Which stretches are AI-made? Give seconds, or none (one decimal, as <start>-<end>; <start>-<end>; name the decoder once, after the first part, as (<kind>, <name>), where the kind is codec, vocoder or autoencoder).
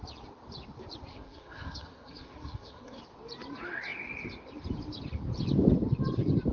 1.1-3.0 (codec, SNAC)